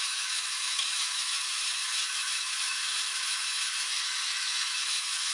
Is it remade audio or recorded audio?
remade